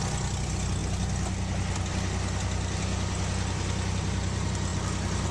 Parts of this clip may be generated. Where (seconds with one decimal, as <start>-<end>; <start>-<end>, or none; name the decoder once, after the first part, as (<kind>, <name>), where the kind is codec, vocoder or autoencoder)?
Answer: none